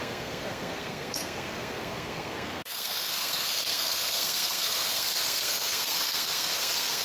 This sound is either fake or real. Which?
fake